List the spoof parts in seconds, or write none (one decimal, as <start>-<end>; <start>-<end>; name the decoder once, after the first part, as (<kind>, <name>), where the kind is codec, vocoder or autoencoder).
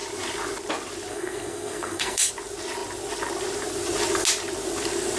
1.1-2.3 (codec, SNAC)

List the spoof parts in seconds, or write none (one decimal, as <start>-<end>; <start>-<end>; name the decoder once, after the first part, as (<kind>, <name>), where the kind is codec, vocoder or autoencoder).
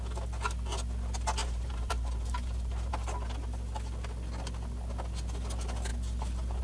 1.4-2.9 (vocoder, BigVGAN v2)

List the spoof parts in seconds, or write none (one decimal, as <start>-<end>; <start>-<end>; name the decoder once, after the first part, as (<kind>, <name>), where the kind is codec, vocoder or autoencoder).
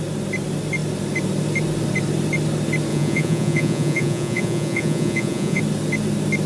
2.9-5.6 (vocoder, Vocos)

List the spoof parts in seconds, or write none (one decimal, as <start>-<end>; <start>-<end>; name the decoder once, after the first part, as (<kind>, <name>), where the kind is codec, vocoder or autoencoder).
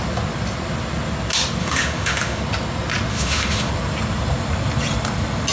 1.6-2.4 (autoencoder, DAC-VAE); 3.1-3.7